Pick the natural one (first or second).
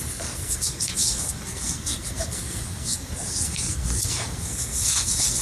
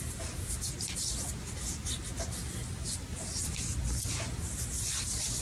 second